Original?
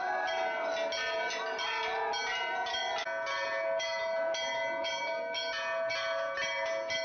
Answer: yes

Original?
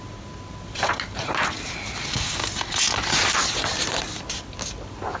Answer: yes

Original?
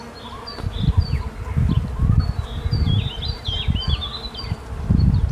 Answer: yes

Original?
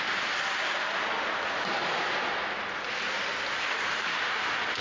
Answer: yes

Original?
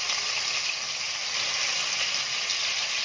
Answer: yes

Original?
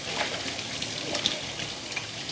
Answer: yes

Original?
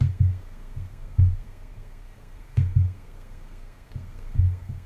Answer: no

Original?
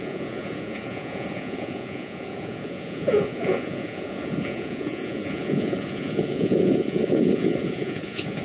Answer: no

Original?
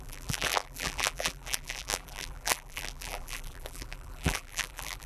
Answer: no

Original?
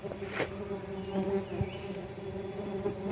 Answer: yes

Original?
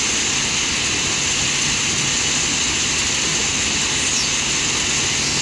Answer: yes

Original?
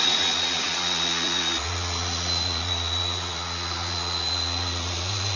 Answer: no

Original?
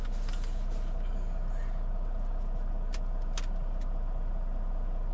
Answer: yes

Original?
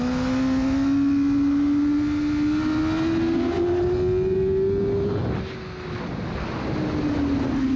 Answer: yes